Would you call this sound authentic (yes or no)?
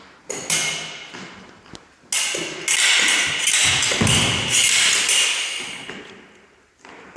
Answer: yes